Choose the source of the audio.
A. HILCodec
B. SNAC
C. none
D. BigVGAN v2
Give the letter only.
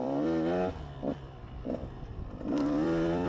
D